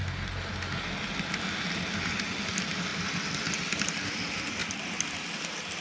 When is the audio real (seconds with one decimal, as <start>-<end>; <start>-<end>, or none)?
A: 0.0-5.8